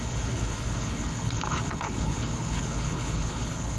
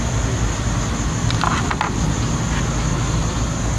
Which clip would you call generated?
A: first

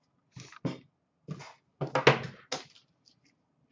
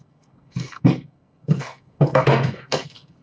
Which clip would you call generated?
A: second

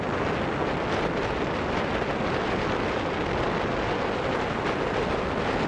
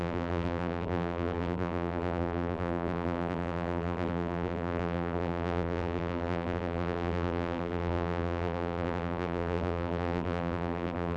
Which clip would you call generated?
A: second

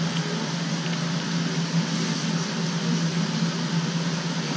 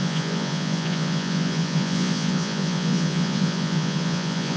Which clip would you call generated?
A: second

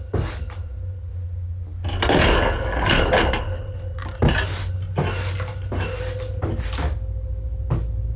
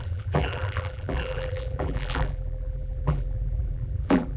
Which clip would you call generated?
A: second